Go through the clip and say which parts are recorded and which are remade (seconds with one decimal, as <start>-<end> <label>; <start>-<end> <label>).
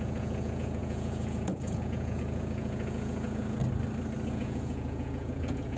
0.0-3.6 remade; 3.6-4.3 recorded; 4.3-5.8 remade